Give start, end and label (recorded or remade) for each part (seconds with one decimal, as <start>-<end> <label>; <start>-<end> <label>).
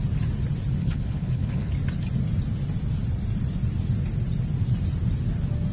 0.0-0.8 recorded; 0.8-1.7 remade; 1.7-5.7 recorded